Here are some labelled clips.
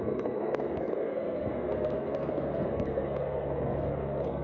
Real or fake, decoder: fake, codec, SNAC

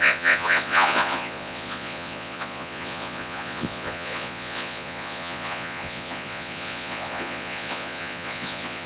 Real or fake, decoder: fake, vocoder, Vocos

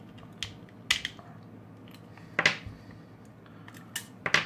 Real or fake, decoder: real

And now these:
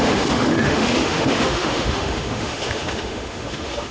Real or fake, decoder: fake, autoencoder, DAC-VAE